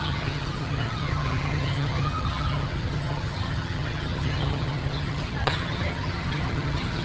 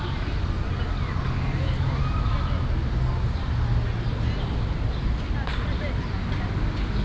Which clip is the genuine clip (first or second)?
second